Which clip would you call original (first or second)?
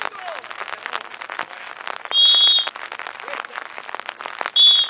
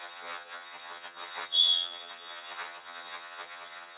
first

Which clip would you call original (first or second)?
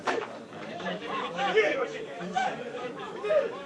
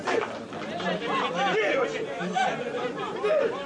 second